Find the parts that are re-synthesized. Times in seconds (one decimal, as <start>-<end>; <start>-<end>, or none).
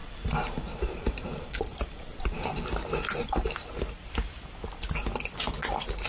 0.0-3.7